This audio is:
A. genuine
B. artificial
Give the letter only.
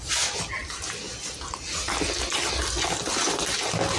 A